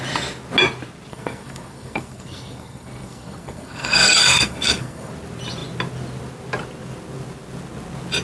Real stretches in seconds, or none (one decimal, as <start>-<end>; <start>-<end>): 0.0-1.1; 5.1-8.2